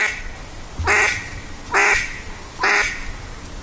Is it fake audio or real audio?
real